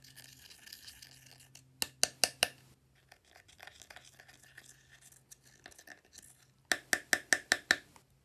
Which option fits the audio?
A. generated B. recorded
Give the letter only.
B